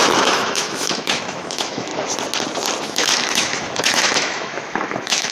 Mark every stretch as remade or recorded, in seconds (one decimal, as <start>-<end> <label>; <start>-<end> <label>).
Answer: 0.0-1.9 remade; 1.9-2.8 recorded; 2.8-5.3 remade